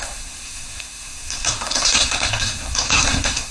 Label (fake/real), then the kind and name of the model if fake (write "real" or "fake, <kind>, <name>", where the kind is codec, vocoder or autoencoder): fake, codec, SNAC